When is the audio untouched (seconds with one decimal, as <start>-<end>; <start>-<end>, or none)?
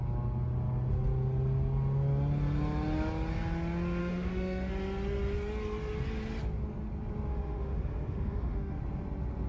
0.0-4.0; 4.7-7.3; 8.8-9.5